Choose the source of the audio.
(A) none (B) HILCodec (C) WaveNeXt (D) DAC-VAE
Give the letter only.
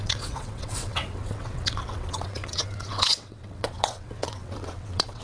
C